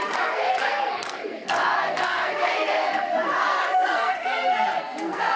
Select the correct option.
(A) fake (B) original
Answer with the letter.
A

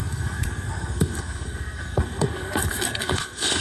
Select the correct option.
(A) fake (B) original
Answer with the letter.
A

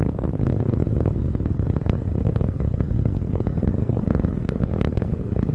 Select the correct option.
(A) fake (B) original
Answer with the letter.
A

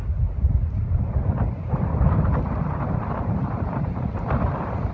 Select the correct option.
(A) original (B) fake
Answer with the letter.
A